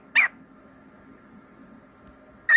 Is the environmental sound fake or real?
real